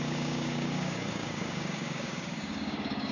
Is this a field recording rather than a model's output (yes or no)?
no